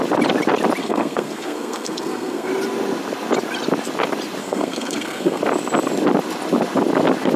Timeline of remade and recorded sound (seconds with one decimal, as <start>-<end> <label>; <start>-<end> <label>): 0.0-0.8 recorded; 0.8-2.5 remade; 2.5-4.4 recorded; 4.4-5.4 remade; 5.4-7.4 recorded